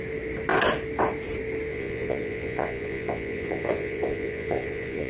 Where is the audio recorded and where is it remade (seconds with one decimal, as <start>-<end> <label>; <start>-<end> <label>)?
0.0-1.7 recorded; 1.7-5.1 remade